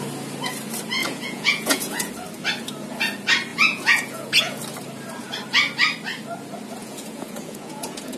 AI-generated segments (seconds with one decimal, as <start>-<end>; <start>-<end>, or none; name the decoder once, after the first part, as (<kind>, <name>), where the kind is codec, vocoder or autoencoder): 1.0-2.1 (vocoder, Vocos); 3.5-4.6; 6.8-8.2